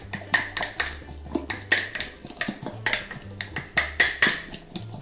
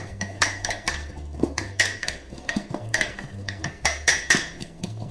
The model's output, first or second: second